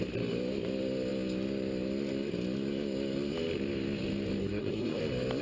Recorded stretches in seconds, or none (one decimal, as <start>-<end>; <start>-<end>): 0.0-4.4; 5.0-5.4